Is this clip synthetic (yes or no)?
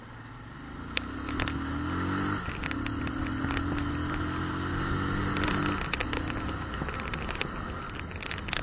no